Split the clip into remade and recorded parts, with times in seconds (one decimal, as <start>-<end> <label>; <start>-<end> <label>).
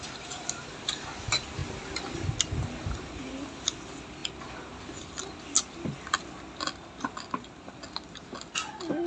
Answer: 0.0-9.1 recorded